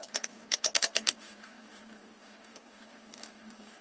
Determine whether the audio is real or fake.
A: fake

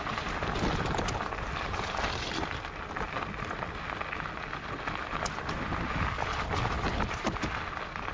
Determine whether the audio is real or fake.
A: real